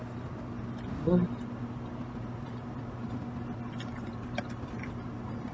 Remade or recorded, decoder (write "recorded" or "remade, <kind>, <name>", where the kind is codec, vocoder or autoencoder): recorded